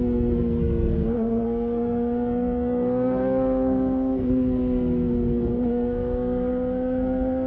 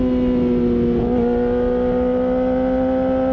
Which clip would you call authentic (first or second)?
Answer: second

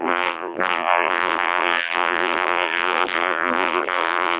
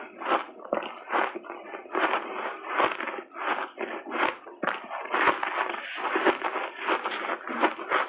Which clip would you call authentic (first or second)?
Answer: second